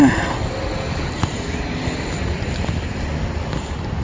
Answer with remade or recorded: recorded